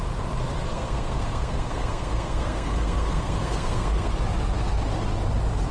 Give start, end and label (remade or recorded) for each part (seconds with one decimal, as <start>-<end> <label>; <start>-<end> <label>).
0.0-0.7 recorded; 0.7-4.1 remade; 4.1-5.7 recorded